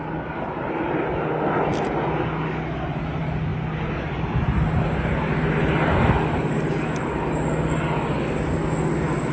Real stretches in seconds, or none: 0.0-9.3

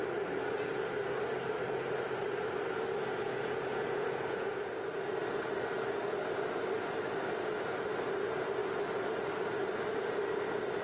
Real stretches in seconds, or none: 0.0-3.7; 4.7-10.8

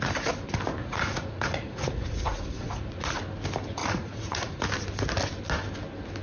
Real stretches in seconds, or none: 0.0-0.8; 3.2-3.8; 4.6-6.2

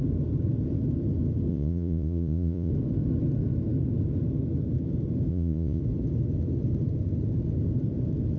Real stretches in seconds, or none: 0.0-1.5; 2.7-5.3; 5.8-8.4

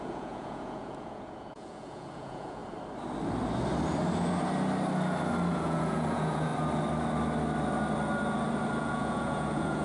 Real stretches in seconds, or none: 2.6-5.5; 6.5-8.8

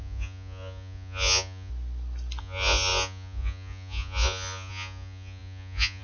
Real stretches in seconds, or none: 1.7-2.4

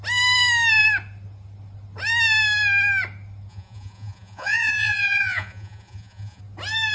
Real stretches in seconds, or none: 0.0-3.5; 6.4-6.9

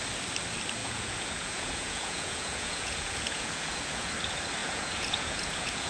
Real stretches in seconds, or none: 0.0-0.8; 4.1-4.6